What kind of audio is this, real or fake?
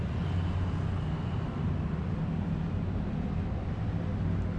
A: real